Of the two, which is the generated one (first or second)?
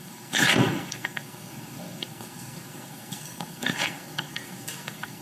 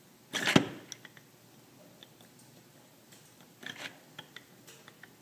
first